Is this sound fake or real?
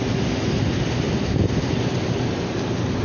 real